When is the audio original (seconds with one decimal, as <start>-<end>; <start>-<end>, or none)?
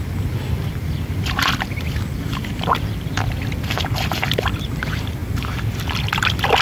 0.0-2.5; 3.4-6.6